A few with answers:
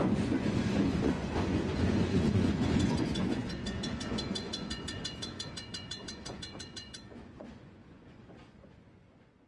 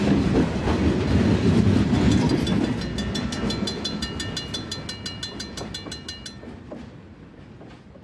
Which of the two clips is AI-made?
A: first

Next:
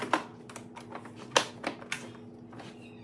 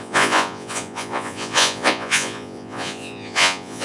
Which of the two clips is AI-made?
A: second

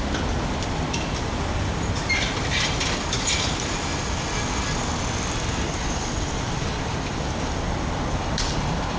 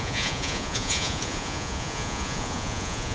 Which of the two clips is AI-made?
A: second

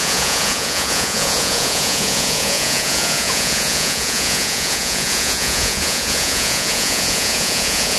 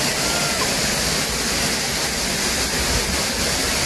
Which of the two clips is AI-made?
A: first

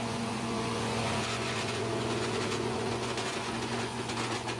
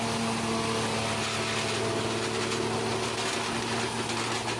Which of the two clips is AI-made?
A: first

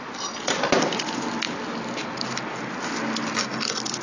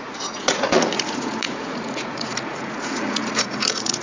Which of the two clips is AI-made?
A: second